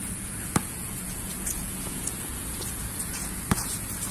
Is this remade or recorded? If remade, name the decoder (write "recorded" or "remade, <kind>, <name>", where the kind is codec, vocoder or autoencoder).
remade, vocoder, Vocos